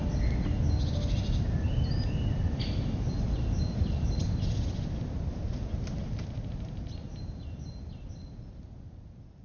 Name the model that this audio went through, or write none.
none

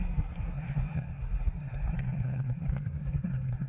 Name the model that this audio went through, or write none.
codec, SNAC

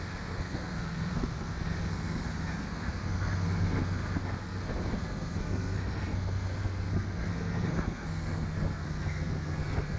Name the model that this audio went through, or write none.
codec, SNAC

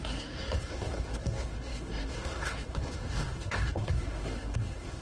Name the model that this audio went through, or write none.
codec, SNAC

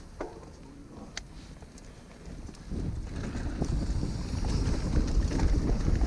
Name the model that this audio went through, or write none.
none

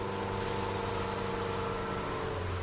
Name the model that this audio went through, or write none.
none